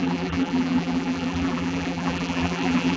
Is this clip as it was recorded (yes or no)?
no